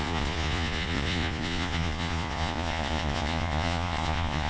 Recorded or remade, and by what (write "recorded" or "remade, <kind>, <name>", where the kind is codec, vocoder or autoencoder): remade, vocoder, Vocos